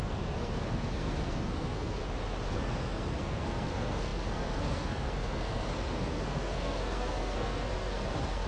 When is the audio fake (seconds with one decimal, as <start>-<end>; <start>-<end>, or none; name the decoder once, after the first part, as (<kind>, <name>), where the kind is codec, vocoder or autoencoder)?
0.0-2.0 (codec, SNAC); 2.5-8.5